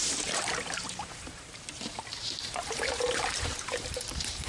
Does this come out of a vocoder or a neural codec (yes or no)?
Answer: yes